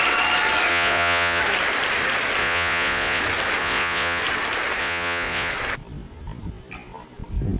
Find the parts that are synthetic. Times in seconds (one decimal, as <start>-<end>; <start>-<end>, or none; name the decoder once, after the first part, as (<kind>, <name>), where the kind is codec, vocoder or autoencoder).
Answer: 0.7-1.4 (vocoder, Vocos); 2.4-3.2; 3.6-4.2; 4.8-5.5